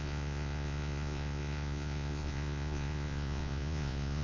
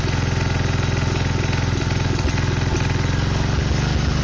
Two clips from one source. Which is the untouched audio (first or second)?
second